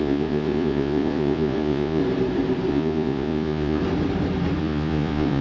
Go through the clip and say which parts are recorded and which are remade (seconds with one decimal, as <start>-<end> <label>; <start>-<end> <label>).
0.0-2.0 remade; 2.0-2.7 recorded; 2.7-3.8 remade; 3.8-4.6 recorded; 4.6-5.4 remade